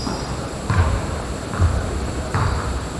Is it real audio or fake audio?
fake